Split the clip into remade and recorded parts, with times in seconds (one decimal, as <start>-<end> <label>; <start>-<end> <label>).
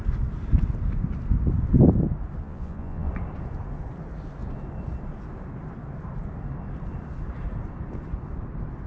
0.0-2.4 recorded; 2.4-3.1 remade; 3.1-8.9 recorded